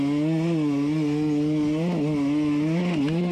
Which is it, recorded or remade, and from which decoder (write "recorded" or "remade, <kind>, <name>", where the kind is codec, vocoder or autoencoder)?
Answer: recorded